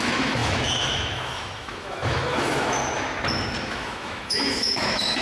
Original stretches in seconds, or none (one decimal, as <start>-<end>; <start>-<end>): 2.8-3.6